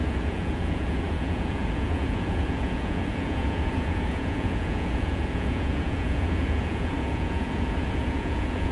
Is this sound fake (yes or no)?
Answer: yes